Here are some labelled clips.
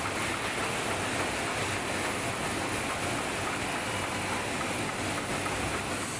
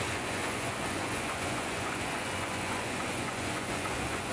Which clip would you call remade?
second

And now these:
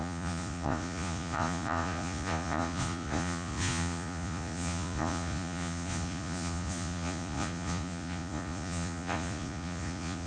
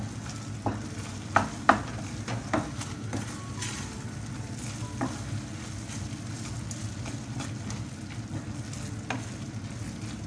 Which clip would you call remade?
first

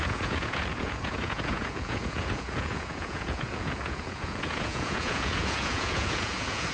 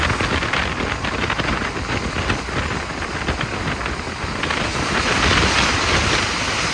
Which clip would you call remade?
first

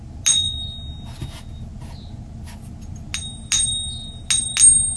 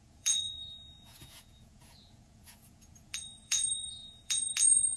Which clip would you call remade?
second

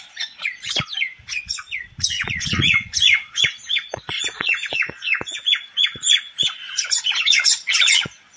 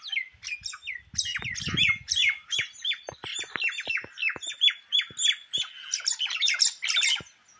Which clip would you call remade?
first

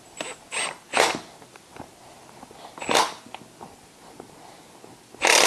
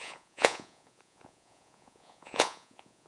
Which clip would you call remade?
second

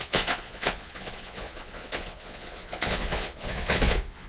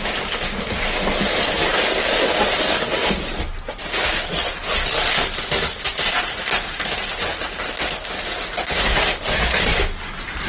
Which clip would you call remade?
first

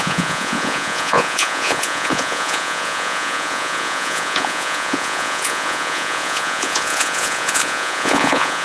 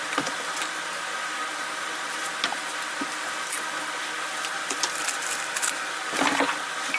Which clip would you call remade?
first